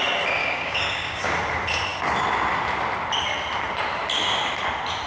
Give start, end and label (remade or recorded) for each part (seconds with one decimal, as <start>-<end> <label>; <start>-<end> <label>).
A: 0.0-0.4 recorded; 0.4-1.3 remade; 1.3-5.1 recorded